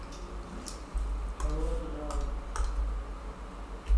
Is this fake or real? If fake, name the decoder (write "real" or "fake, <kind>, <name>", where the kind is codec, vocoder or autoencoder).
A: real